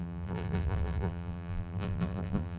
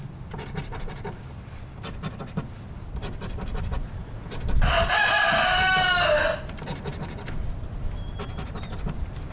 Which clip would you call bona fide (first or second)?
second